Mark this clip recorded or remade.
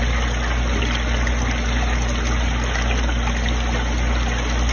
recorded